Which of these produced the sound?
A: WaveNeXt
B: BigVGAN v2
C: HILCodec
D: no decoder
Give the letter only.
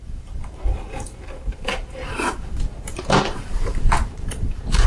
B